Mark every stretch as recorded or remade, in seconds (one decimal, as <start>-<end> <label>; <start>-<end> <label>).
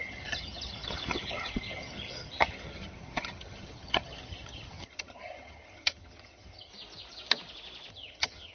0.0-6.7 remade; 6.7-7.9 recorded; 7.9-8.5 remade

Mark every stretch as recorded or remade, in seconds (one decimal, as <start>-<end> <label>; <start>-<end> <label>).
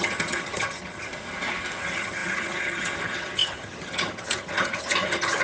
0.0-1.1 remade; 1.1-1.8 recorded; 1.8-5.4 remade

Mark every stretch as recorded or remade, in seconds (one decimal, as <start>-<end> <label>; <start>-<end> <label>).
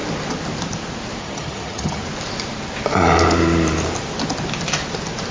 0.0-1.2 recorded; 1.2-2.0 remade; 2.0-5.3 recorded